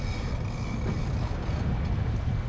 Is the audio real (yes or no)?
yes